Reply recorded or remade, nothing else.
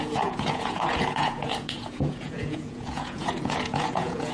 remade